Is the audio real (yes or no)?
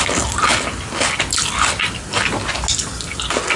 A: yes